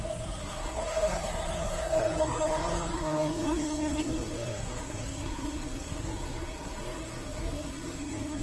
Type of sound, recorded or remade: remade